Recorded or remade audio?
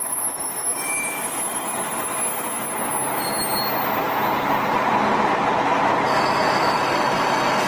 recorded